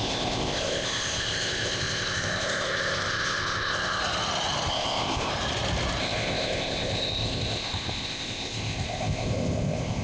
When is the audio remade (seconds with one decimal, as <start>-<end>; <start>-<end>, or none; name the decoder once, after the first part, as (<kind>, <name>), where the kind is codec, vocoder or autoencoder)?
0.0-4.0 (codec, ZipCodec); 4.7-5.3; 6.0-10.0